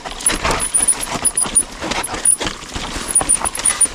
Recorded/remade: recorded